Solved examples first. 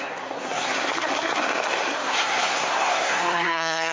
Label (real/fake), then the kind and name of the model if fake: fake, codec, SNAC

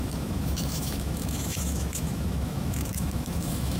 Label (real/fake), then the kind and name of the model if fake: fake, autoencoder, DAC-VAE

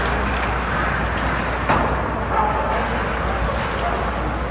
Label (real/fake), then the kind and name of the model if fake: real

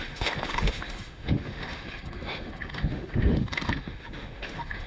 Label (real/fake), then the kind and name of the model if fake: fake, autoencoder, DAC-VAE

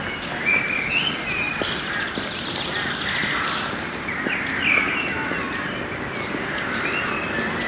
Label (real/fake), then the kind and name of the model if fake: real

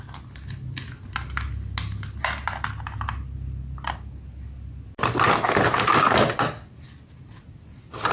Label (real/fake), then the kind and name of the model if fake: real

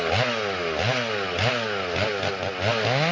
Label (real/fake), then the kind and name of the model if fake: real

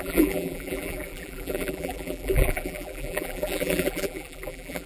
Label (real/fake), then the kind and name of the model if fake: fake, vocoder, BigVGAN v2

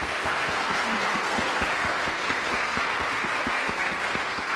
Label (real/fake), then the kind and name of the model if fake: fake, codec, SNAC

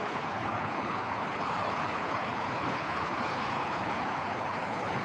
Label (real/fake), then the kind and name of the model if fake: fake, codec, HILCodec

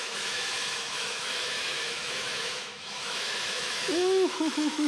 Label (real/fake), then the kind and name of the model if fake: fake, autoencoder, DAC-VAE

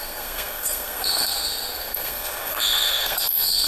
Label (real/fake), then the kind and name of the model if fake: fake, codec, SNAC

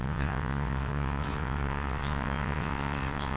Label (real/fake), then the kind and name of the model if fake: fake, vocoder, WaveNeXt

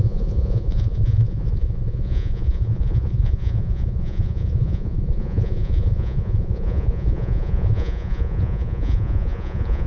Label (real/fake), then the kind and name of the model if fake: fake, vocoder, Vocos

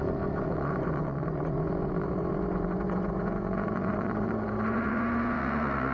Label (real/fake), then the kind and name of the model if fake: fake, vocoder, Vocos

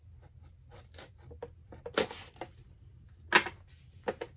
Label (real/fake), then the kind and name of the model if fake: real